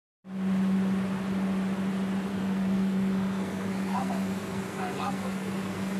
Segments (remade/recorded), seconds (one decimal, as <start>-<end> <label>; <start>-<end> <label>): 0.0-2.3 recorded; 2.3-6.0 remade

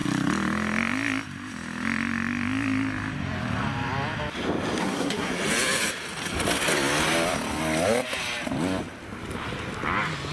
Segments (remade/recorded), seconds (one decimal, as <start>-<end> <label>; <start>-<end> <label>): 0.0-4.8 recorded; 4.8-5.3 remade; 5.3-10.3 recorded

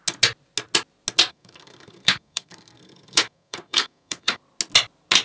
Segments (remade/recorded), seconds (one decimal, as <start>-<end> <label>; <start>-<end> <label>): 0.0-1.3 recorded; 1.3-4.4 remade; 4.4-5.2 recorded

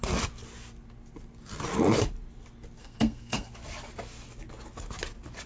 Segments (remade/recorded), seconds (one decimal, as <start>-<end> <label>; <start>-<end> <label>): 0.0-2.8 recorded; 2.8-3.5 remade; 3.5-5.5 recorded

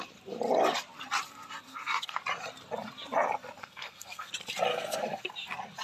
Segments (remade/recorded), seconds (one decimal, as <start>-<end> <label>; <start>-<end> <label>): 0.0-1.7 recorded; 1.7-2.2 remade; 2.2-3.6 recorded; 3.6-4.3 remade; 4.3-4.7 recorded; 4.7-5.3 remade; 5.3-5.8 recorded

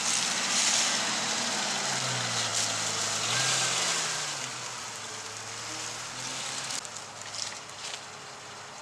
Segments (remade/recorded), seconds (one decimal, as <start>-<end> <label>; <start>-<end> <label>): 0.0-8.8 recorded